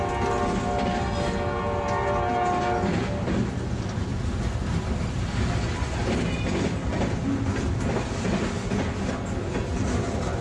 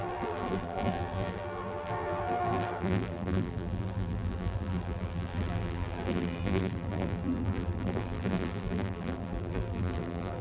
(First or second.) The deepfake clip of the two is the second